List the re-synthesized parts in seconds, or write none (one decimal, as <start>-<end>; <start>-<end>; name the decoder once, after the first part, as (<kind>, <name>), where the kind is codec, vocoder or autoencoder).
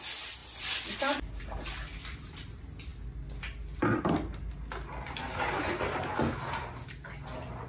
0.4-1.0 (vocoder, BigVGAN v2)